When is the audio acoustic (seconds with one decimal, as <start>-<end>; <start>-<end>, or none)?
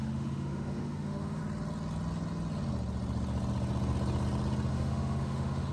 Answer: 1.4-4.7